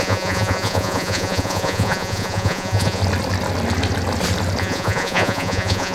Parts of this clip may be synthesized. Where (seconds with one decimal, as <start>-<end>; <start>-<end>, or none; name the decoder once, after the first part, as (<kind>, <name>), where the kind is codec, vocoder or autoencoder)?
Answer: 0.0-3.0 (vocoder, Vocos); 4.6-5.9